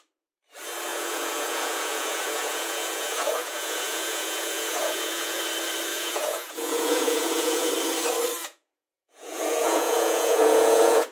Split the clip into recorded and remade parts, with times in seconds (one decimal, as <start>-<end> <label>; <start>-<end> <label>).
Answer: 0.0-0.9 recorded; 0.9-5.4 remade; 5.4-5.9 recorded; 5.9-7.7 remade; 7.7-8.4 recorded; 8.4-11.1 remade